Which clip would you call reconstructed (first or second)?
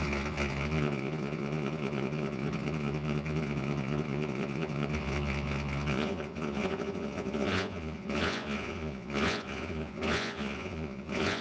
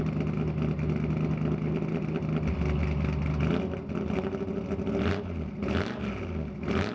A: first